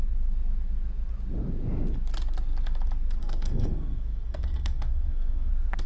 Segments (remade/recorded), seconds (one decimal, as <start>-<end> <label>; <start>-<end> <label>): 0.0-3.2 recorded; 3.2-5.5 remade; 5.5-5.9 recorded